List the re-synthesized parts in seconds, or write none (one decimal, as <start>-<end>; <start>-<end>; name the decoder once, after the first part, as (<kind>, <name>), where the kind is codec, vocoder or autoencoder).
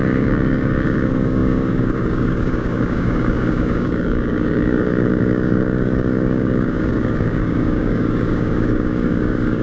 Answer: 0.0-9.6 (codec, DAC)